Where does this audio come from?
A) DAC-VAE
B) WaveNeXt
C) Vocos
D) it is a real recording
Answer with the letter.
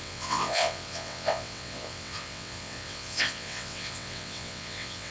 B